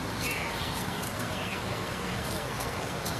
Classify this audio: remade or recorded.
remade